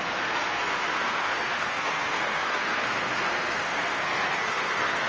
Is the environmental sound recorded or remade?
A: remade